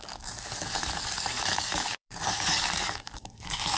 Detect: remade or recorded remade